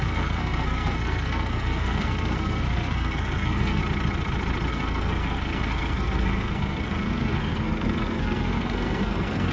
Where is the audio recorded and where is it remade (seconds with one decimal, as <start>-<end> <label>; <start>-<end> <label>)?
0.0-3.8 remade; 3.8-4.7 recorded; 4.7-9.5 remade